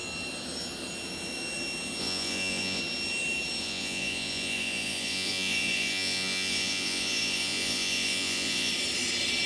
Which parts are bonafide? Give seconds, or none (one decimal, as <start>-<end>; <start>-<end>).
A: 0.0-2.0; 2.8-3.6; 8.7-9.5